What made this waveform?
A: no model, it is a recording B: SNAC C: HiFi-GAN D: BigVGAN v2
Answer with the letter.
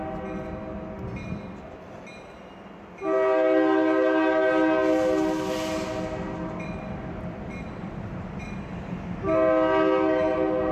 A